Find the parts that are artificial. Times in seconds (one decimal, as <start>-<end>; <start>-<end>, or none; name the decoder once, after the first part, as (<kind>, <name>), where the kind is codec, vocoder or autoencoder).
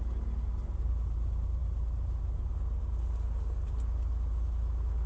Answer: none